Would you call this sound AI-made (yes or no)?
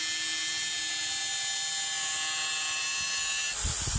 no